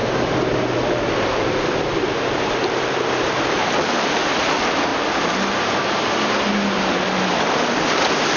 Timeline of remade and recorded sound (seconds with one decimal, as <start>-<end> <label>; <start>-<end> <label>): 0.0-1.1 recorded; 1.1-4.9 remade; 4.9-6.0 recorded; 6.0-8.4 remade